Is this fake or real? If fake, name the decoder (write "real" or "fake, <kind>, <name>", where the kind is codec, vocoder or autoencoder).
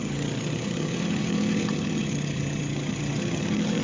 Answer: fake, vocoder, HiFi-GAN